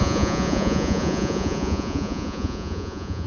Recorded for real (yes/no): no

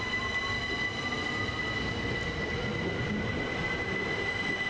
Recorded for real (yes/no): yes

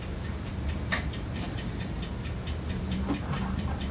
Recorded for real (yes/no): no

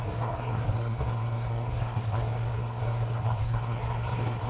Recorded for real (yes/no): no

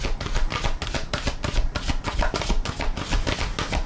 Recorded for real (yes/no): yes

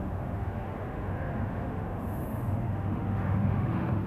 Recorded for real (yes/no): no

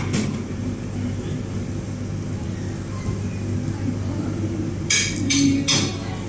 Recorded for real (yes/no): yes